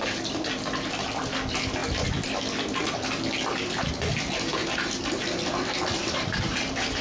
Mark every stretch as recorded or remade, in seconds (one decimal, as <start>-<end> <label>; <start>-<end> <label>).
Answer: 0.0-4.6 recorded; 4.6-5.2 remade; 5.2-6.0 recorded; 6.0-7.0 remade